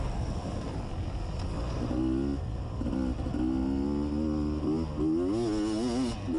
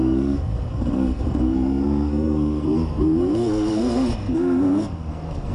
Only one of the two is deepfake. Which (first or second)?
second